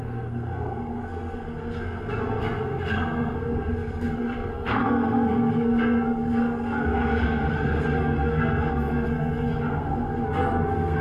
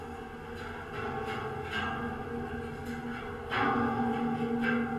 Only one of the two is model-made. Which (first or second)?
first